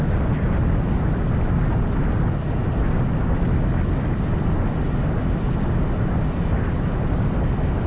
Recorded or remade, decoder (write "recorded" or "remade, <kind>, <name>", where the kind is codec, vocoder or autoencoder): recorded